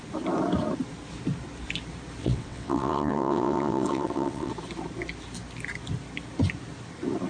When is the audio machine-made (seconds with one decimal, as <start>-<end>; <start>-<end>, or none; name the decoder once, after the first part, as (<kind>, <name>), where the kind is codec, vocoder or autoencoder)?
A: 2.2-4.5 (vocoder, WaveNeXt)